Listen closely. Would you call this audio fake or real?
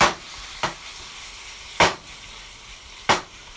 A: fake